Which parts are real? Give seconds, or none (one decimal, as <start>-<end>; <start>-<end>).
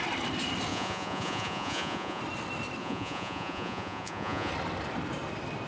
0.0-0.7; 2.2-2.8; 4.5-5.7